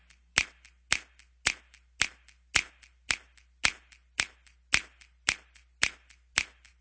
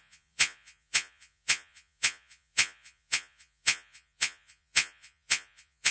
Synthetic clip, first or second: second